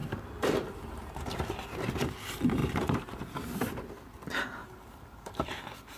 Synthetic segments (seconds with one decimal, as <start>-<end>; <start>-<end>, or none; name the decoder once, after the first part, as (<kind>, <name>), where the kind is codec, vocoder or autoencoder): 0.0-1.9 (vocoder, BigVGAN v2); 2.6-3.2; 4.6-5.6

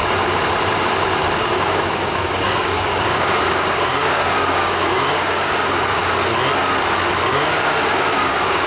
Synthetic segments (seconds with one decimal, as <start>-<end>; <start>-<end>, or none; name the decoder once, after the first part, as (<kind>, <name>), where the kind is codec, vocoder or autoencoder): 1.4-6.0 (codec, DAC); 7.3-8.7